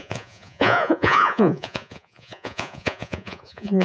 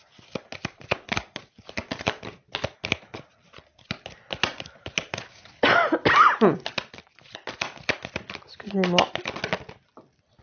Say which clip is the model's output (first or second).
first